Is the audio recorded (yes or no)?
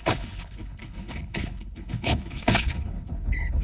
no